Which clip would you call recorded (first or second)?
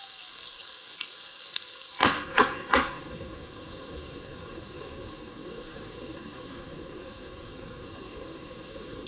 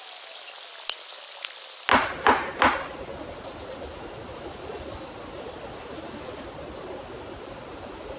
second